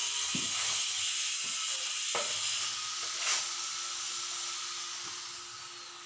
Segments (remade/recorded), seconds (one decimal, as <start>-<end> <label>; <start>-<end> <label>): 0.0-6.1 recorded